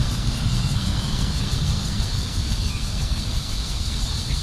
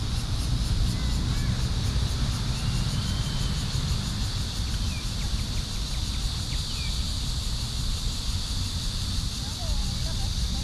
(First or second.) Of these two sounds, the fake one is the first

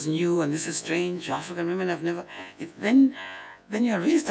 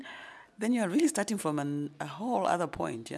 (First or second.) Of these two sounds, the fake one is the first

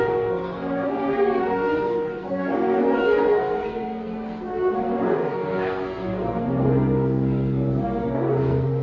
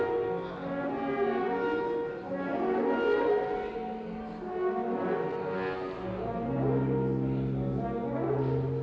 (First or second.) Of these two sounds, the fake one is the first